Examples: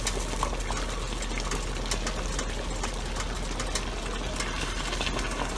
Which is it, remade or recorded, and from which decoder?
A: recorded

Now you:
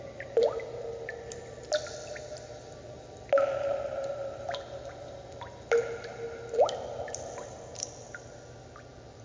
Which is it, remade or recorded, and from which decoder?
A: recorded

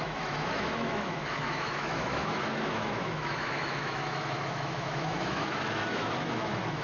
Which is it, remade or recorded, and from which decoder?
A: remade, autoencoder, DAC-VAE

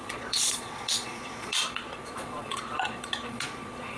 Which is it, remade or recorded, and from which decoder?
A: remade, vocoder, Vocos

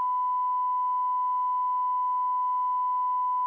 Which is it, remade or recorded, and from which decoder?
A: recorded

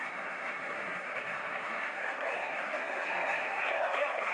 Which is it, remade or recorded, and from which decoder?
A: remade, codec, SNAC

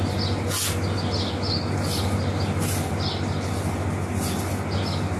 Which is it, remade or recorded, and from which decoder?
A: recorded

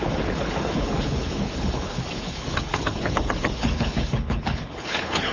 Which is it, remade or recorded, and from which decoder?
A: remade, codec, HILCodec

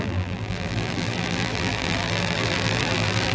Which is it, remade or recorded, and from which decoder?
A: remade, vocoder, BigVGAN v2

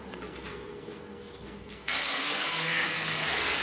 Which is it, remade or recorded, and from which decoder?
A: remade, codec, SNAC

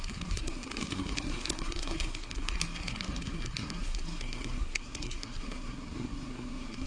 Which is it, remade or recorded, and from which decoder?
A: remade, codec, SNAC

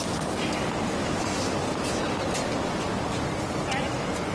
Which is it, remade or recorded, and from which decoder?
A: recorded